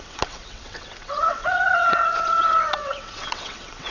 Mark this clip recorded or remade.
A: remade